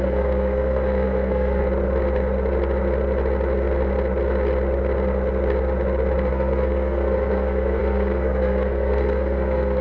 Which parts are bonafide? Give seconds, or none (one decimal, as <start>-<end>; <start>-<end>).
1.6-6.3